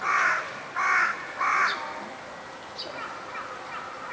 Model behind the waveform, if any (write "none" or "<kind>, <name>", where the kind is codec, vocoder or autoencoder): none